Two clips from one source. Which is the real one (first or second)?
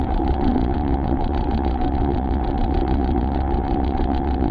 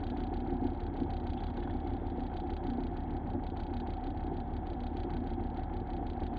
second